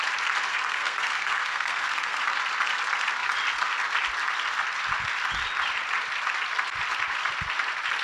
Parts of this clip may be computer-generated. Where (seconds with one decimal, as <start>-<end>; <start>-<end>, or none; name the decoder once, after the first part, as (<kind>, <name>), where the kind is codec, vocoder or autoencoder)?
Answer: 0.5-2.2 (codec, SNAC)